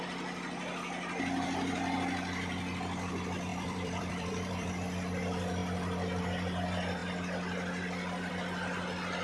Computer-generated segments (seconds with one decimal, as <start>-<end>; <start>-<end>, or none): 3.5-4.7